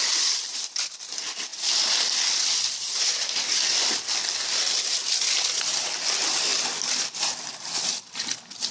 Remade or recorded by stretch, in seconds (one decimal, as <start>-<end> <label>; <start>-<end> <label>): 0.0-8.7 recorded